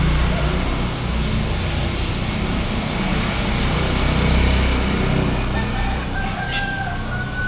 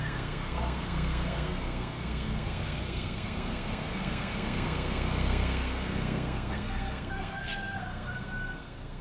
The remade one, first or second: second